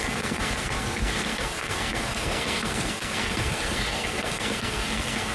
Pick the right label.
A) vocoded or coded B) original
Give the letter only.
A